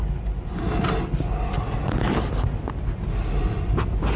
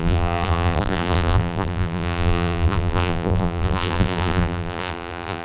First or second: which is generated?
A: second